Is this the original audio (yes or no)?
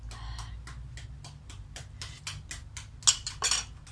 yes